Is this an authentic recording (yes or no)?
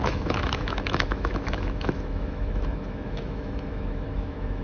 no